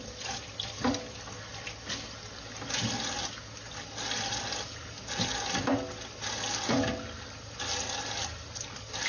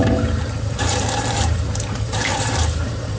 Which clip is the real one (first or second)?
first